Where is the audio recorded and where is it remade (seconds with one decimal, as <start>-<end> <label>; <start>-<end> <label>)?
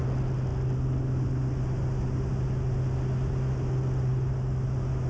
0.0-5.1 recorded